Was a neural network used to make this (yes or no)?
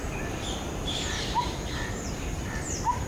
yes